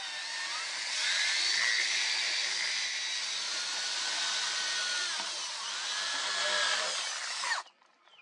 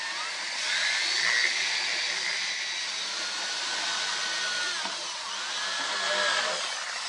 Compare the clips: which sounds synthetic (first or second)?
second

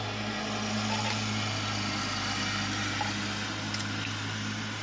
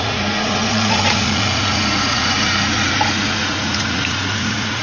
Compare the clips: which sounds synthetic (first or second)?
second